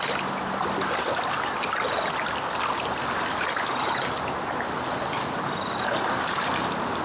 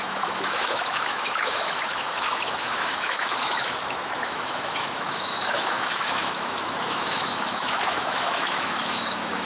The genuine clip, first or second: first